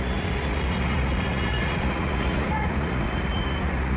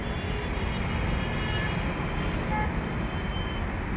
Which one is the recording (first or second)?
second